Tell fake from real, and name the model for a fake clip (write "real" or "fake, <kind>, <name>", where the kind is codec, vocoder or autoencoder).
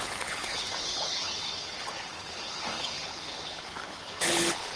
fake, codec, HILCodec